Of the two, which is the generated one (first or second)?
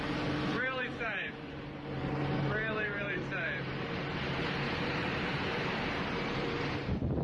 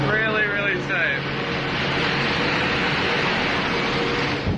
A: first